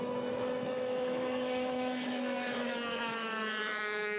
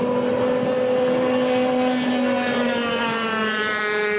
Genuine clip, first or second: second